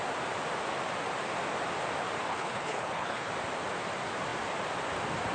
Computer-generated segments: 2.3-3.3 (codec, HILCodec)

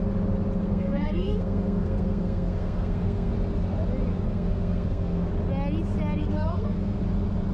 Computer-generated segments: 0.6-3.3 (codec, SNAC); 4.1-5.3; 6.2-7.0

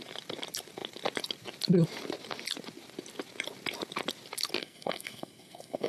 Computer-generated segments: 4.6-5.9 (codec, SNAC)

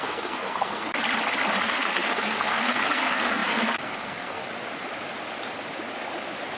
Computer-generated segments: 0.0-0.9 (codec, SNAC); 1.6-4.4

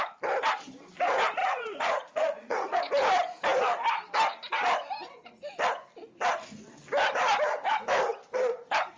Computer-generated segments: 1.4-2.8 (vocoder, Vocos)

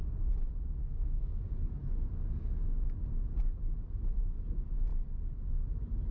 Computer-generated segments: 0.8-1.4 (codec, SNAC)

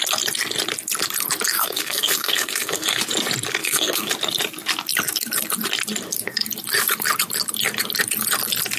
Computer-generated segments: 1.5-3.0 (codec, SNAC); 3.6-4.1